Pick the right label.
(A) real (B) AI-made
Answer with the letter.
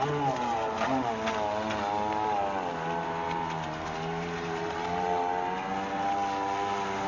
A